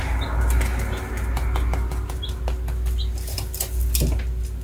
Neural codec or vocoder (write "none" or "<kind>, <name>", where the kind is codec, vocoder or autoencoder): none